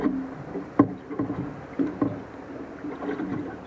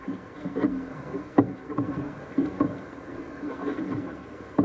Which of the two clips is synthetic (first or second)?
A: second